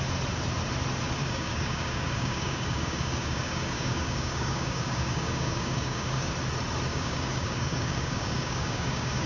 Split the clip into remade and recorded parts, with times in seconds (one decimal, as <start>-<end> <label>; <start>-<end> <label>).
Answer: 0.0-1.2 recorded; 1.2-6.3 remade; 6.3-6.9 recorded; 6.9-9.3 remade